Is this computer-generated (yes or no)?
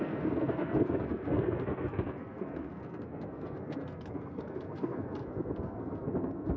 yes